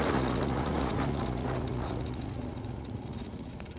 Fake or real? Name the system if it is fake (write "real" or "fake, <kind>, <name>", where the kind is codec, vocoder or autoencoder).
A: fake, vocoder, Vocos